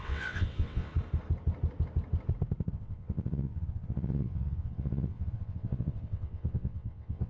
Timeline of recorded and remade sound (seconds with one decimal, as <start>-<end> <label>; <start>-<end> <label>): 0.0-0.9 remade; 0.9-2.7 recorded; 2.7-7.3 remade